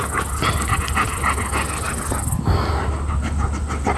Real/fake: real